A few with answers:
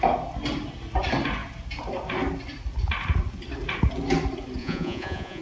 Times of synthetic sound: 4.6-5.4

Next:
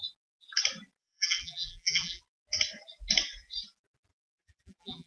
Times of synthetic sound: 1.0-2.2; 4.1-5.1

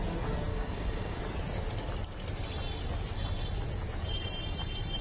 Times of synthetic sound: 0.5-1.2

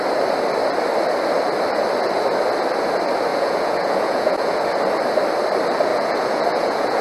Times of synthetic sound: 3.3-4.6; 5.9-7.0

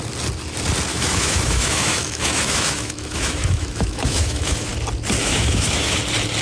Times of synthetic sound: 0.9-4.7; 5.2-6.0

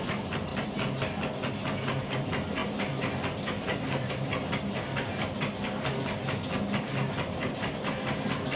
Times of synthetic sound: 2.6-4.1